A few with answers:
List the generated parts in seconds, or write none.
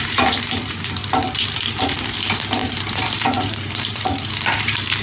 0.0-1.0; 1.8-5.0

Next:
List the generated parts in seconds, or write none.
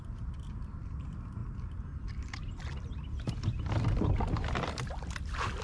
none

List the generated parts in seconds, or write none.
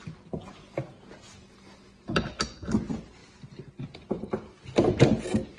none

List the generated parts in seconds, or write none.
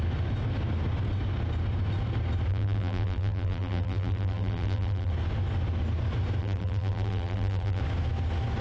2.5-5.1; 6.4-7.8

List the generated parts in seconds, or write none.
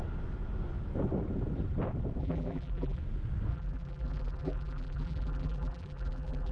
2.2-3.0; 3.5-6.5